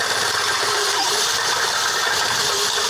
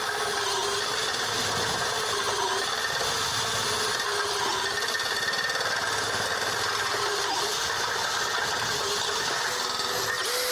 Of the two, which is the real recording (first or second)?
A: second